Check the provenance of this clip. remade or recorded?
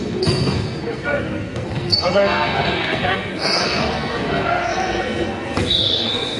remade